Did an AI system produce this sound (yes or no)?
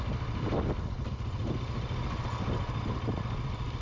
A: no